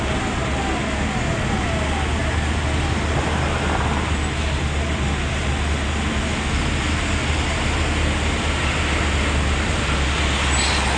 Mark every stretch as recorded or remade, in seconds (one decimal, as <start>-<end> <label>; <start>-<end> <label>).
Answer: 0.0-11.0 recorded